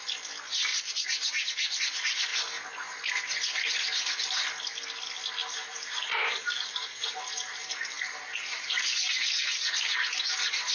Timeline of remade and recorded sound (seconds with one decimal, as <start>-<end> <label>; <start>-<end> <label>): 0.0-0.7 recorded; 0.7-1.8 remade; 1.8-5.4 recorded; 5.4-10.2 remade; 10.2-10.7 recorded